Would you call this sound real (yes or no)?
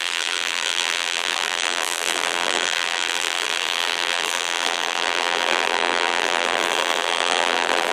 no